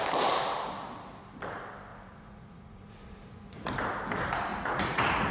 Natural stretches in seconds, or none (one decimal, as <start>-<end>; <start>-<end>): 0.0-1.9; 3.7-4.5